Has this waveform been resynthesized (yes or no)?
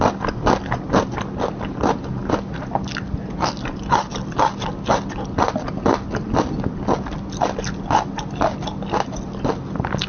no